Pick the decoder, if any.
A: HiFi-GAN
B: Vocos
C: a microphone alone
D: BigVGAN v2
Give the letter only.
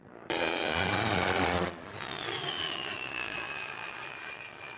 B